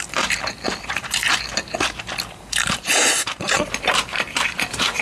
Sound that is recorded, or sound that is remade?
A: remade